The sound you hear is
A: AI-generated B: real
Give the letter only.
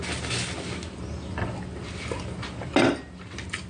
B